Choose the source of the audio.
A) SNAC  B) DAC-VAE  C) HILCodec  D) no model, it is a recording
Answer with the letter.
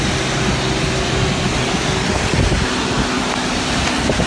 D